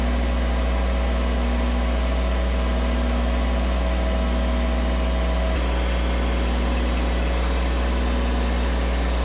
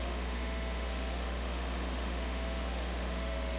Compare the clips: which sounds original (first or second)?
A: first